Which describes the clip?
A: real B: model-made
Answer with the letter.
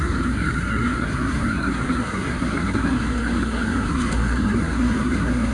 B